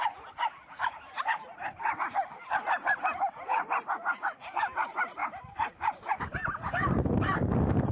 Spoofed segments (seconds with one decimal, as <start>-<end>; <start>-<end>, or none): 5.2-6.1

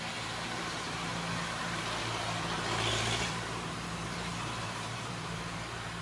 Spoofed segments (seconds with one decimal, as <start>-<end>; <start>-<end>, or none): 0.0-1.1; 2.9-6.0

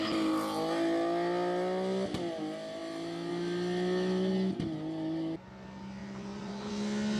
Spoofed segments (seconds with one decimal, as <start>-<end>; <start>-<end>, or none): 6.0-6.7

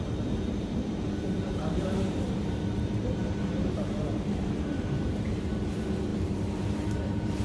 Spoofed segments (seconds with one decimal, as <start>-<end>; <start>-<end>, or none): 0.0-7.4

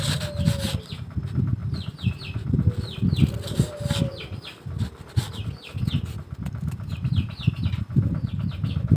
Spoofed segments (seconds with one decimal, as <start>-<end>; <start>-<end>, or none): none

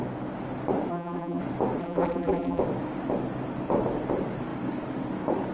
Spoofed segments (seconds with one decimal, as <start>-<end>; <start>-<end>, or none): 0.9-1.4; 1.8-2.6

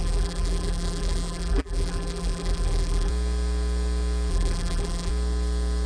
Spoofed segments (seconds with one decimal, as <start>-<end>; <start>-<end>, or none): 0.0-3.1; 4.3-5.1

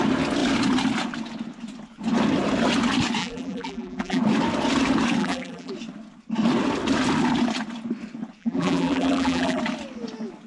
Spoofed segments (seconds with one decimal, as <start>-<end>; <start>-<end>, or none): 3.2-4.2; 5.2-5.7; 8.4-9.6